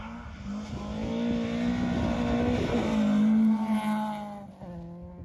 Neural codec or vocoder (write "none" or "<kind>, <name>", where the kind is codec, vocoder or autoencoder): none